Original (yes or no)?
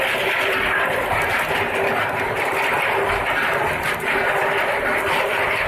yes